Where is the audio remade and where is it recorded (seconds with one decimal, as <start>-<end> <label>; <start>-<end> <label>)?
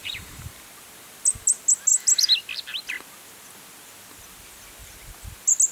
0.0-0.5 remade; 0.5-5.7 recorded